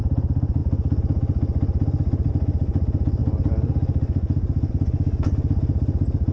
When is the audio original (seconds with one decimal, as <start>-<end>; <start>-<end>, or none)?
0.0-6.3